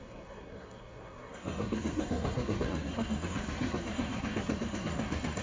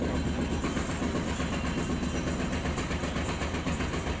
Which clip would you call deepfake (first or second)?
first